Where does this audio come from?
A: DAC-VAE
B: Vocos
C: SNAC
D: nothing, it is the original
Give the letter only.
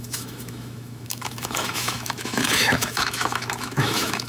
A